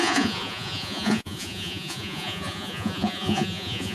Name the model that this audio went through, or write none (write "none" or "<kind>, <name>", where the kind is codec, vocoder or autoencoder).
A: vocoder, Vocos